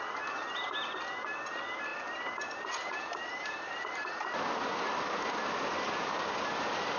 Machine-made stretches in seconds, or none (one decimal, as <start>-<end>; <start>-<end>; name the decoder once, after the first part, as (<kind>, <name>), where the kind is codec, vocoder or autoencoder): 1.9-4.1 (vocoder, BigVGAN v2)